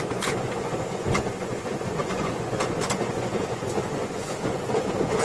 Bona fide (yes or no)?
no